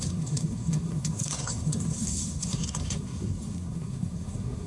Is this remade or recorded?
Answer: remade